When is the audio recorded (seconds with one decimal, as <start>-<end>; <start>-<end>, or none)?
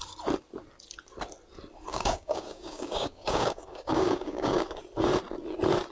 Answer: 0.0-1.9; 4.8-5.9